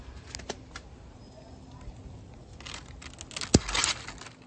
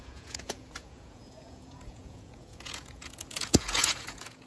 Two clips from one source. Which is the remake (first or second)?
second